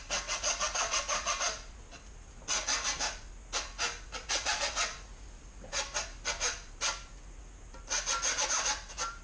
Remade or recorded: recorded